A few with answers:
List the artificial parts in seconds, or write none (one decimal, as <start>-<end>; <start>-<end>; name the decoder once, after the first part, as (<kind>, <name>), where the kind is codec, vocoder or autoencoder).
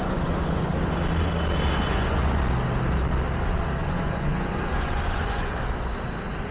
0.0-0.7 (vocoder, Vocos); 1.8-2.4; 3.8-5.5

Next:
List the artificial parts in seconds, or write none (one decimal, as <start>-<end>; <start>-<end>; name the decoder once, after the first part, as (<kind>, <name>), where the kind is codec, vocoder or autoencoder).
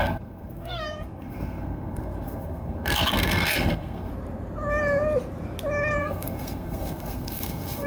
0.0-4.1 (codec, SNAC); 6.0-7.9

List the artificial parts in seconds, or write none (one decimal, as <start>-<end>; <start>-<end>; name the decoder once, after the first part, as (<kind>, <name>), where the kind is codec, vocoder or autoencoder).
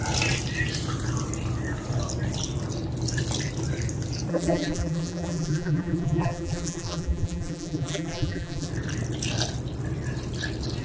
4.3-8.7 (vocoder, BigVGAN v2)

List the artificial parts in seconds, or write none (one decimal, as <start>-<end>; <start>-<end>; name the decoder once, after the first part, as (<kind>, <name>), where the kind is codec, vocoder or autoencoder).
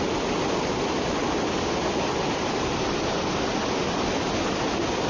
none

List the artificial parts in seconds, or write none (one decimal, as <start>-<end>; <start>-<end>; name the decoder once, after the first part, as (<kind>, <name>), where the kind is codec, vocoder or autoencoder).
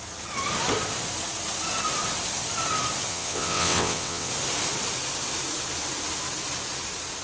3.1-4.3 (vocoder, WaveNeXt)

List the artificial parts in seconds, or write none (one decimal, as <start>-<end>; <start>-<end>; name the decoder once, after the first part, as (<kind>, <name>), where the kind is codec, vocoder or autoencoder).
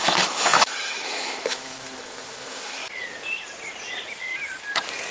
0.0-2.8 (autoencoder, DAC-VAE)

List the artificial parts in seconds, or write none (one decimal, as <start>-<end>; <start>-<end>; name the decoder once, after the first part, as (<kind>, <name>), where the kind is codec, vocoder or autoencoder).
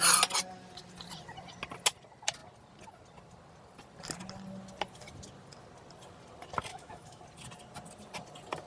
6.7-7.2 (autoencoder, DAC-VAE)